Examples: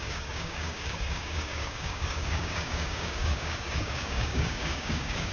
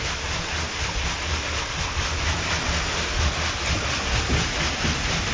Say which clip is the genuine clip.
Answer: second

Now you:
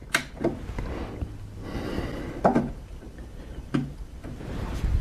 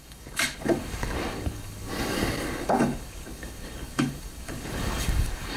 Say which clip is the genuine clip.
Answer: first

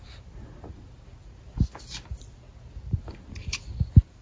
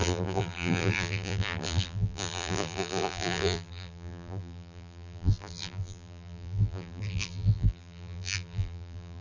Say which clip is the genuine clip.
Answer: first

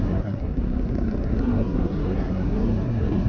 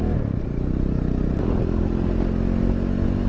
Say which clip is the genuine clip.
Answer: second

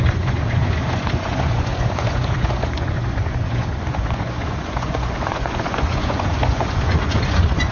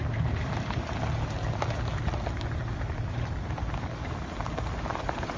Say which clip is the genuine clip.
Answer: second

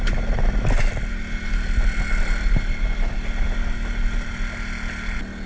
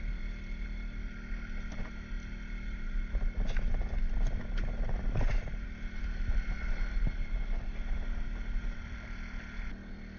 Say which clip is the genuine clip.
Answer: first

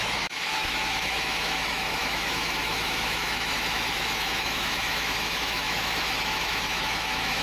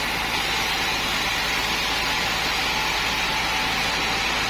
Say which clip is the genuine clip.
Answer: second